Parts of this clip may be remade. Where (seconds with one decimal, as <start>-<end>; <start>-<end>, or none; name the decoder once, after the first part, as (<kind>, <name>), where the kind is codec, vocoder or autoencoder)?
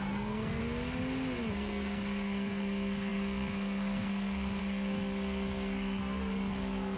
0.0-0.6 (codec, SNAC); 1.5-7.0